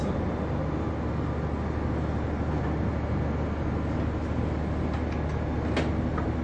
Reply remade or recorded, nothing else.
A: recorded